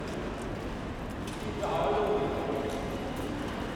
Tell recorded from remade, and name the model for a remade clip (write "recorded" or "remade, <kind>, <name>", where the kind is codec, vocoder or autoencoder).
recorded